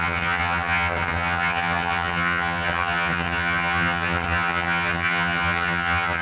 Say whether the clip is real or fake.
fake